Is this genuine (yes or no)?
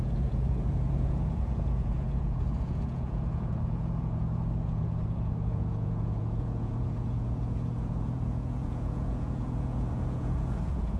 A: no